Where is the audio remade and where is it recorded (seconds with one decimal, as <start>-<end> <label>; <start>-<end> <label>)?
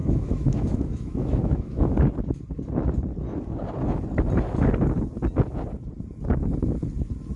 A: 0.0-1.8 remade; 1.8-7.4 recorded